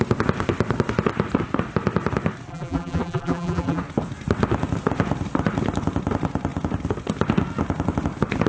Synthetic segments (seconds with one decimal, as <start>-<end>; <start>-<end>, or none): 2.5-3.8